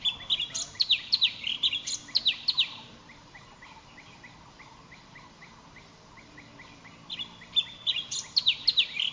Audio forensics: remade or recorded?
recorded